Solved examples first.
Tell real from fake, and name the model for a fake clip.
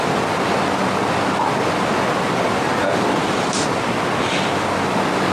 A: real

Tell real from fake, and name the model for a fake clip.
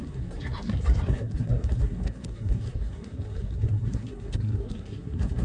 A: fake, codec, SNAC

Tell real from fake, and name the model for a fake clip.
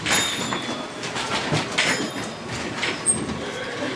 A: real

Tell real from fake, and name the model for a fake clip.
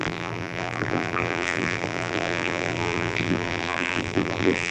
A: fake, vocoder, BigVGAN v2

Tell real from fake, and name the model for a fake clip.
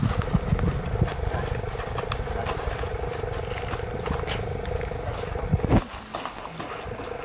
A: real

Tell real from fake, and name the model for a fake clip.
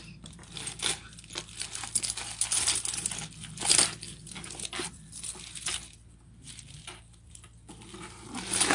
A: real